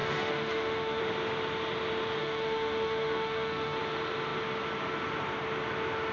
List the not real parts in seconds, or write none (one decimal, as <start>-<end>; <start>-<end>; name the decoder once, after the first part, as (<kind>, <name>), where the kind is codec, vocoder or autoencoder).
0.0-1.0 (autoencoder, DAC-VAE); 2.2-3.8